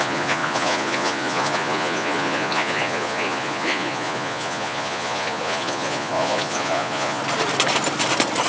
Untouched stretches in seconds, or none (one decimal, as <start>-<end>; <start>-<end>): 7.2-8.5